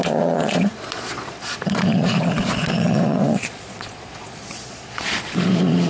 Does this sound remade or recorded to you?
remade